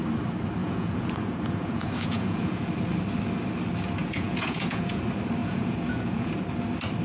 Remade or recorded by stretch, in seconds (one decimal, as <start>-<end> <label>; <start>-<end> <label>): 0.0-0.6 recorded; 0.6-2.7 remade; 2.7-4.0 recorded; 4.0-5.0 remade; 5.0-5.4 recorded; 5.4-6.3 remade; 6.3-7.0 recorded